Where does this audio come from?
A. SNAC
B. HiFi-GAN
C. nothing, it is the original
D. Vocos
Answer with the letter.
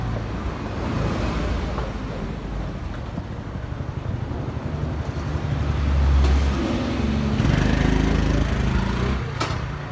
C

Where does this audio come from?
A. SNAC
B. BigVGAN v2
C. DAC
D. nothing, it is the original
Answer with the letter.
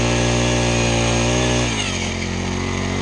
D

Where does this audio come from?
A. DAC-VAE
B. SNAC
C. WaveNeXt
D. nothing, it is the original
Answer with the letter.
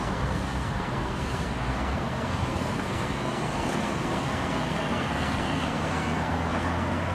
B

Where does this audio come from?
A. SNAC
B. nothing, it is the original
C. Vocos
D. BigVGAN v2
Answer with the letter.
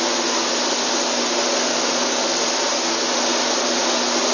B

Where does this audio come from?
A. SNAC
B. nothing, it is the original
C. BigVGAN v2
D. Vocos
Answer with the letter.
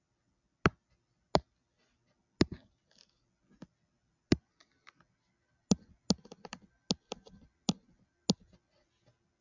B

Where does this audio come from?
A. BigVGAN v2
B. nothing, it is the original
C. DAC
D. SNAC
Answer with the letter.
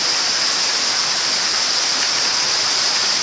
B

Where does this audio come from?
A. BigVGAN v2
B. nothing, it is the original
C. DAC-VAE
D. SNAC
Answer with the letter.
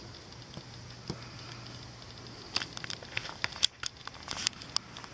B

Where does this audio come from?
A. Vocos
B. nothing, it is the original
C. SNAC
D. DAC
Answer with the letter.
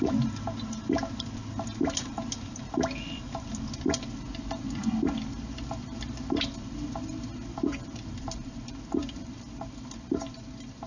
B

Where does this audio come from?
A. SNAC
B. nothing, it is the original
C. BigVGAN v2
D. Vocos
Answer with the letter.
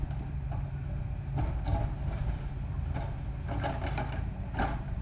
B